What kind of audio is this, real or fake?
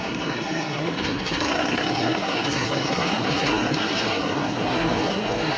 fake